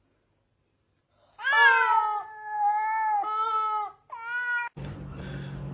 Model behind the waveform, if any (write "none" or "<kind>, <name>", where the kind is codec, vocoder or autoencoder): none